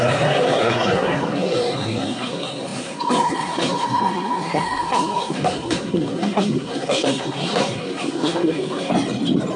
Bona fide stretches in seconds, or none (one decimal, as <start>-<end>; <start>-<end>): 8.9-9.6